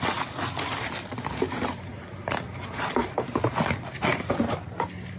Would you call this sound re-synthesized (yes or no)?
no